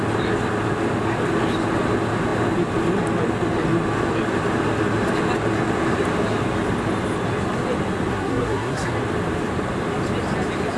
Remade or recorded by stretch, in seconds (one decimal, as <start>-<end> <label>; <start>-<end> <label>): 0.0-8.1 recorded; 8.1-8.9 remade; 8.9-10.8 recorded